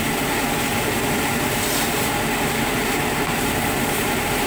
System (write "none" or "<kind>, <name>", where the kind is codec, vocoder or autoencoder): vocoder, BigVGAN v2